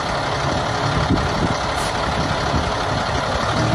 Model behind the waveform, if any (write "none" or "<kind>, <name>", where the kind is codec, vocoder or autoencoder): none